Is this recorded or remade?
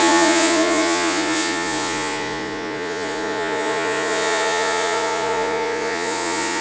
remade